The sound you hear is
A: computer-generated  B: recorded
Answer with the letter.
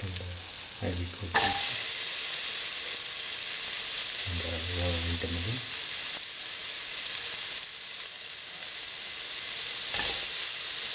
B